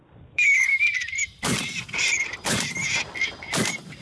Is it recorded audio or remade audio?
remade